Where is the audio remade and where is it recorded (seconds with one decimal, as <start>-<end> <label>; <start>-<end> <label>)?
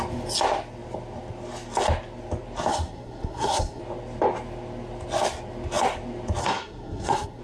0.0-2.7 recorded; 2.7-3.8 remade; 3.8-6.4 recorded; 6.4-7.4 remade